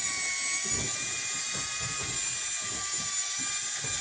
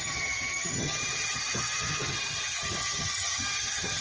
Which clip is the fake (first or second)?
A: second